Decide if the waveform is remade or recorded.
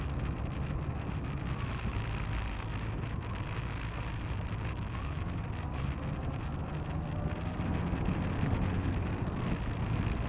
recorded